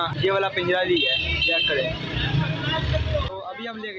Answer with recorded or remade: recorded